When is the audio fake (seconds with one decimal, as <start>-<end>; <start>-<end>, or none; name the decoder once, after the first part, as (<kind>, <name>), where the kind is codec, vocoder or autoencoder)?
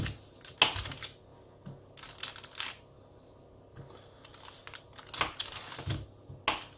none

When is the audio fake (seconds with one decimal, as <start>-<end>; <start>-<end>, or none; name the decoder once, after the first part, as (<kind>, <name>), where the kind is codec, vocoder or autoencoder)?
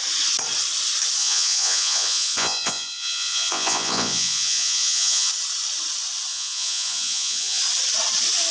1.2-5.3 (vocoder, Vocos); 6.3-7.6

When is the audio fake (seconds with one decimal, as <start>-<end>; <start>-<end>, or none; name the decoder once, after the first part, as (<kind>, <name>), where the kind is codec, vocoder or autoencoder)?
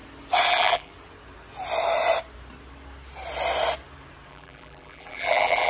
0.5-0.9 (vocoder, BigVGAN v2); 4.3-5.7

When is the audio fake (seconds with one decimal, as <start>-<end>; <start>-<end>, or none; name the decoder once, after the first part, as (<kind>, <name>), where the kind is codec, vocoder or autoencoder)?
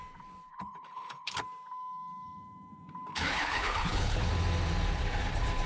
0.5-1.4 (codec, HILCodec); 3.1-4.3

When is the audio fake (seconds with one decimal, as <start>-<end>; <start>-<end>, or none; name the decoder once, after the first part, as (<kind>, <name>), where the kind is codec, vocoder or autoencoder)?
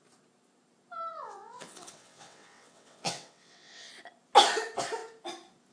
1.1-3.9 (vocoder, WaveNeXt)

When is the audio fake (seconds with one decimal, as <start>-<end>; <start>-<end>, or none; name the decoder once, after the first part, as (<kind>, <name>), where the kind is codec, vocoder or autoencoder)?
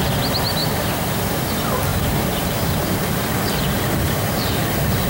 0.6-1.1 (vocoder, BigVGAN v2); 1.9-5.1